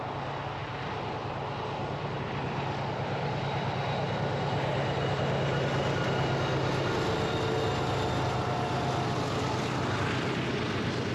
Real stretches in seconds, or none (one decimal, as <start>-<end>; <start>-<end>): 0.0-11.1